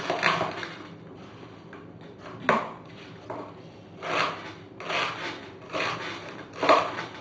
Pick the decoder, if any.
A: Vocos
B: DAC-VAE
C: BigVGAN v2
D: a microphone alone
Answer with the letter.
D